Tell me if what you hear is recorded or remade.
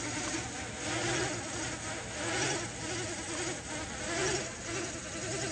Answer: recorded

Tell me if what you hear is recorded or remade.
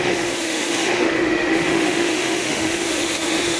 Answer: remade